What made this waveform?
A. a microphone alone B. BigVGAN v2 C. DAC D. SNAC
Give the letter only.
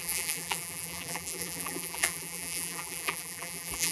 B